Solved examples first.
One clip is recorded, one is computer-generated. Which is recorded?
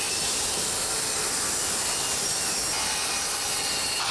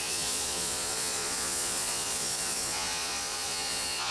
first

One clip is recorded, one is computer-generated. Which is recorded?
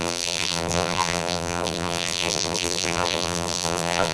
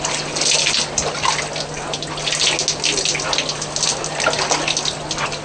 second